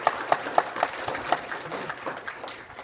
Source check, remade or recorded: remade